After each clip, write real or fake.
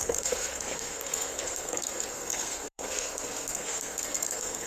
fake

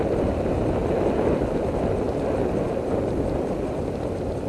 real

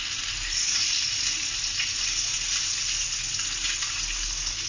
real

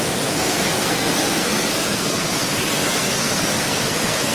fake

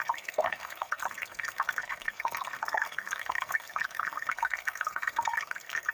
fake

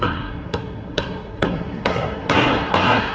fake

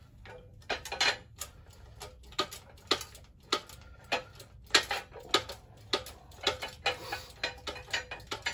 real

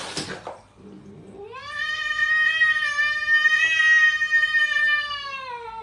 real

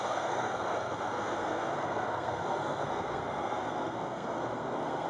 fake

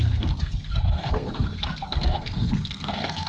fake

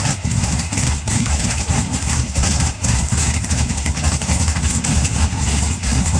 fake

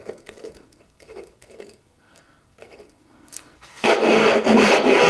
fake